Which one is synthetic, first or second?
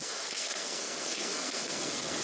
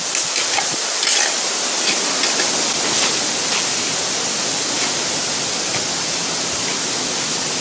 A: first